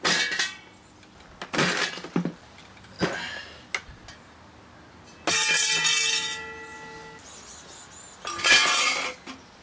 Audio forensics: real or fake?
real